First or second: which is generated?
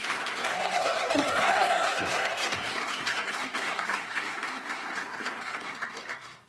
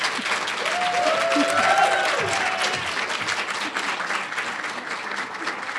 first